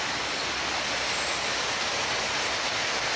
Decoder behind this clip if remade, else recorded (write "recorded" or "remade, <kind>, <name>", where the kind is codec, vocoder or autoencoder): recorded